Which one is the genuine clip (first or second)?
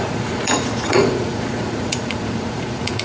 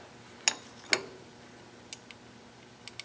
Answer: second